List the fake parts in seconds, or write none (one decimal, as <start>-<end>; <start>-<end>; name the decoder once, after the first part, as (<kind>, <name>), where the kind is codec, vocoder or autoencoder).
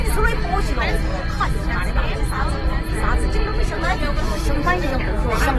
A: 3.5-4.2 (vocoder, BigVGAN v2)